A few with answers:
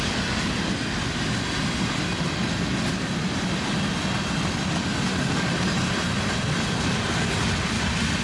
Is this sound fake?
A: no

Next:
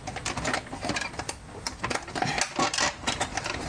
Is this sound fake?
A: no